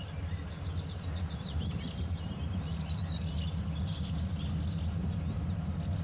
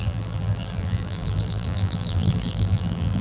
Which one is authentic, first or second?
first